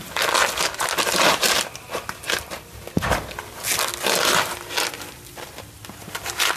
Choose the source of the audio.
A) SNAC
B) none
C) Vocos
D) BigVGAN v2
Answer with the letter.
B